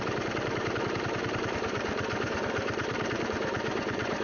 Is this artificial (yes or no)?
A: yes